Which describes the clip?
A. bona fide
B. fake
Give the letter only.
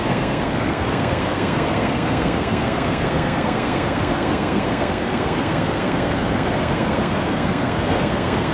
B